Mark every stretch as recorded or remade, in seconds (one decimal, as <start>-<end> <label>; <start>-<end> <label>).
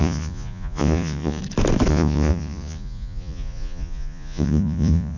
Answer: 0.0-1.4 remade; 1.4-1.9 recorded; 1.9-5.2 remade